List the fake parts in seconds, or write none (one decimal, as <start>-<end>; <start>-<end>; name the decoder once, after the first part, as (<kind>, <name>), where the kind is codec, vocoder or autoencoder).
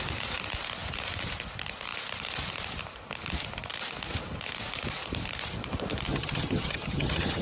6.1-7.4 (vocoder, HiFi-GAN)